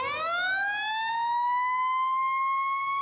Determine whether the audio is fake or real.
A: real